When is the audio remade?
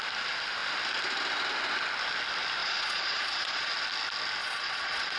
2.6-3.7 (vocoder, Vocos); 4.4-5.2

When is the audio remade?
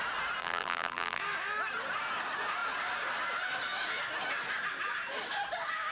0.4-1.2 (vocoder, BigVGAN v2)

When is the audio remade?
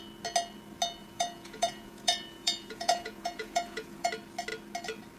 1.0-4.1 (vocoder, Vocos)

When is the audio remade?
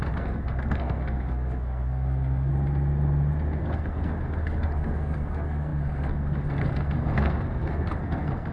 0.0-2.5 (codec, SNAC); 3.6-8.5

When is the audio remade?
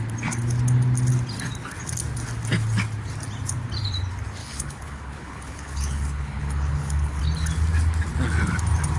4.4-7.2 (codec, HILCodec)